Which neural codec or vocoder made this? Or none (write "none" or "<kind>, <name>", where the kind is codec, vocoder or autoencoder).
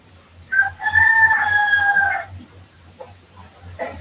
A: vocoder, BigVGAN v2